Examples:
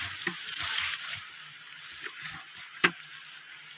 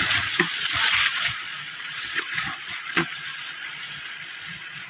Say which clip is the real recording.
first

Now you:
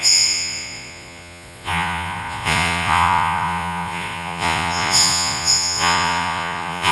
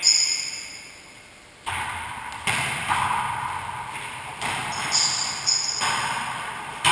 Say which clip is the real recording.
second